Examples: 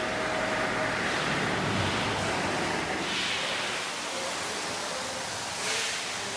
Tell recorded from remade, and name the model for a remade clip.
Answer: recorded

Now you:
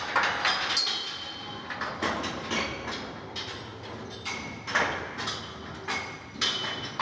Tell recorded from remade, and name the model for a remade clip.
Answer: recorded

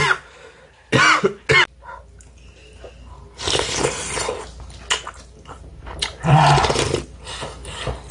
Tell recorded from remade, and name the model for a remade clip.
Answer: recorded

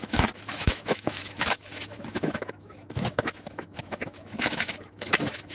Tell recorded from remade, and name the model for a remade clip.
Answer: remade, autoencoder, DAC-VAE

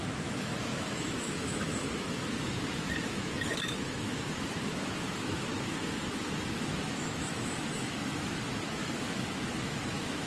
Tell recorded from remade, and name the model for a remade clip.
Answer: remade, autoencoder, DAC-VAE